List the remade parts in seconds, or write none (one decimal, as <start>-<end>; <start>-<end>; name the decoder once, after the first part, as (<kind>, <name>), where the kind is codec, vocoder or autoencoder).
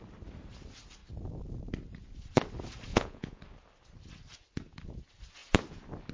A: 2.9-3.4 (vocoder, Vocos)